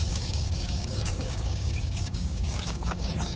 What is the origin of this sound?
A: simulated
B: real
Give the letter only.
A